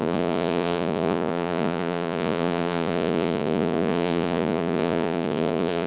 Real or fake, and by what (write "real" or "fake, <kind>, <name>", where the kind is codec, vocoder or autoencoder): fake, vocoder, Vocos